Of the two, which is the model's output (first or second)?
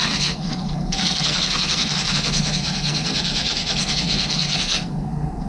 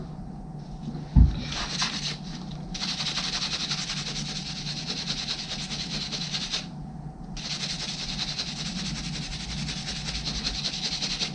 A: first